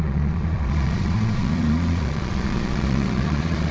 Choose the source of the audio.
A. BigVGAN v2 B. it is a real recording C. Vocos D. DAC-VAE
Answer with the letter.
C